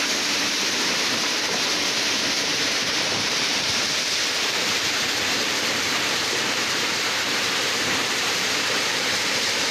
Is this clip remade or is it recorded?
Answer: remade